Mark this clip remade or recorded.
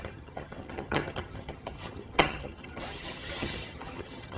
remade